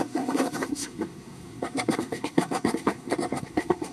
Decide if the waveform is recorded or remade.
remade